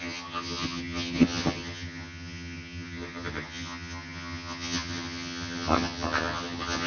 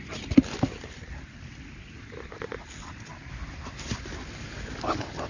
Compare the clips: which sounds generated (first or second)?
first